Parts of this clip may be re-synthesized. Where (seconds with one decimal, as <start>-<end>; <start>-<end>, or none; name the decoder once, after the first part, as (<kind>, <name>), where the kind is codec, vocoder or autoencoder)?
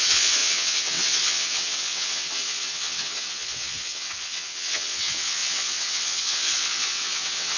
0.0-7.6 (vocoder, WaveNeXt)